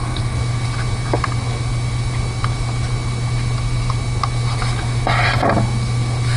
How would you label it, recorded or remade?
recorded